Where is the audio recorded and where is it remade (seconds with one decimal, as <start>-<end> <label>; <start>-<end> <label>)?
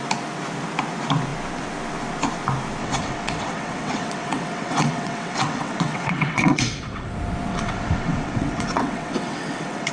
0.0-2.8 recorded; 2.8-7.1 remade; 7.1-7.5 recorded; 7.5-9.9 remade